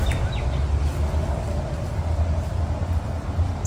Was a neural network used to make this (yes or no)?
no